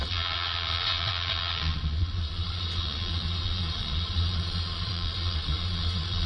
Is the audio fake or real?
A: fake